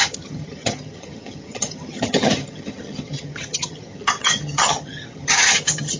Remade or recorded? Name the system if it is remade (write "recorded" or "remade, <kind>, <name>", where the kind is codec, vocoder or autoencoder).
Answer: remade, vocoder, HiFi-GAN